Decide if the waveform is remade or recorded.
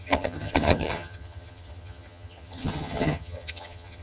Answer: remade